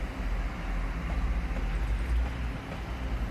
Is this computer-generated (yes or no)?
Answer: no